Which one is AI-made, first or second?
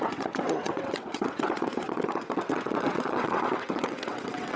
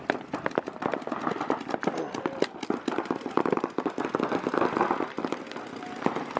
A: first